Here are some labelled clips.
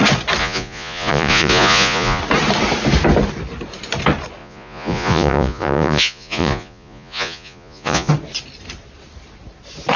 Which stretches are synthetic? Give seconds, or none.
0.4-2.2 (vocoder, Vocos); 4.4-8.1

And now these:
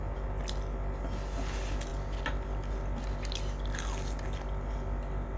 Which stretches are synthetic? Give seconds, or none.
none

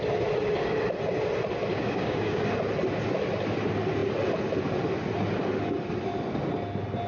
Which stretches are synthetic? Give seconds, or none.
1.7-2.4 (codec, DAC)

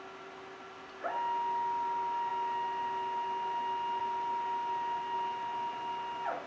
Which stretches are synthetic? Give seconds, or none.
none

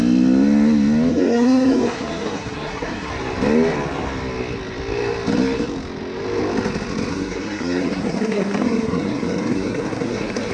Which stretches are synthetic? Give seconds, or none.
1.1-3.1 (codec, SNAC); 7.1-10.5